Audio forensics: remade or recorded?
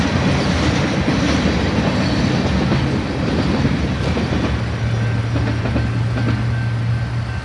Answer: recorded